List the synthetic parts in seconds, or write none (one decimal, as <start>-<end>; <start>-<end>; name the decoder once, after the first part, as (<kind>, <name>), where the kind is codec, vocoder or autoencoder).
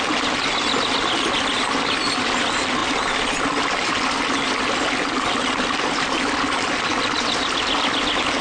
none